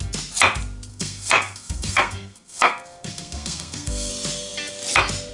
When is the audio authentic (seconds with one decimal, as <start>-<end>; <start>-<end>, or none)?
0.0-0.9; 4.1-5.3